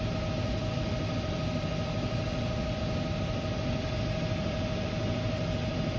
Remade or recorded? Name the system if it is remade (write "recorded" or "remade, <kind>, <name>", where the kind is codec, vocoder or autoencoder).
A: recorded